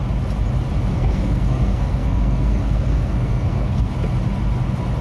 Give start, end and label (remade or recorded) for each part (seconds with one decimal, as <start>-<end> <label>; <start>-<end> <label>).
0.0-0.9 recorded; 0.9-3.9 remade; 3.9-5.0 recorded